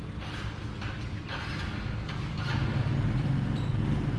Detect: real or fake real